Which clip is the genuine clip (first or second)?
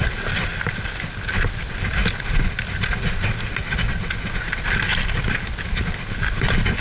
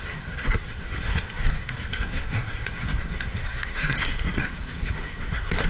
first